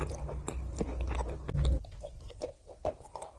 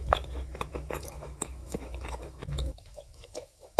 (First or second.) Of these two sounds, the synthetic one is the second